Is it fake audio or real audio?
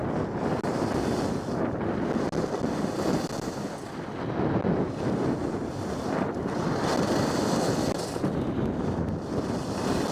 real